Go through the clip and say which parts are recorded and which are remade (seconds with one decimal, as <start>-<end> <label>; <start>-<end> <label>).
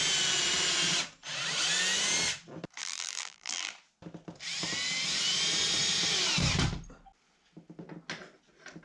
0.0-2.8 recorded; 2.8-3.7 remade; 3.7-8.8 recorded